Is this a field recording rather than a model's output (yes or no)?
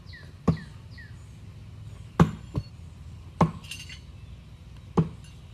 yes